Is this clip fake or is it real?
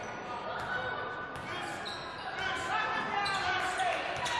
real